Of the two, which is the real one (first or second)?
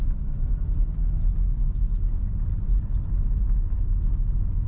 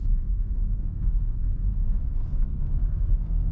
first